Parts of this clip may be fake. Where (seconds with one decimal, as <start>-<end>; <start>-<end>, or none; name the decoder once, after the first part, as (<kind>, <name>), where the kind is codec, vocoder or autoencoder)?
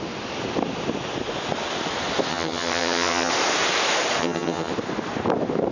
2.3-3.3 (vocoder, HiFi-GAN); 4.2-4.7